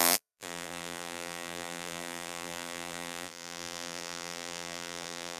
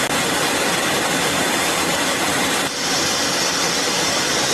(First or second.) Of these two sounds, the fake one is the first